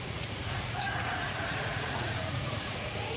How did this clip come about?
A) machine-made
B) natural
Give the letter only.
A